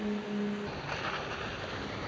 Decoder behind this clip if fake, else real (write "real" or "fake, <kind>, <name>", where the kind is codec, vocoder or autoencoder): real